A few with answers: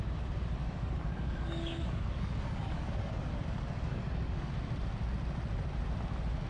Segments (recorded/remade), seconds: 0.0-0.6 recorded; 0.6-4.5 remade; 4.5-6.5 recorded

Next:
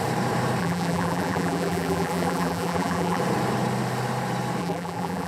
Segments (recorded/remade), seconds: 0.0-0.6 recorded; 0.6-3.2 remade; 3.2-4.6 recorded; 4.6-5.3 remade

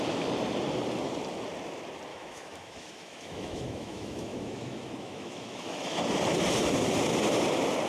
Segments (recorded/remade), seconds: 0.0-2.1 recorded; 2.1-6.0 remade; 6.0-7.9 recorded